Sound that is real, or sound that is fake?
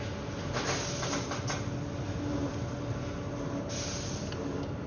real